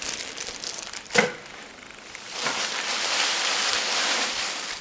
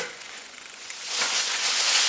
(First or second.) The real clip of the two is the first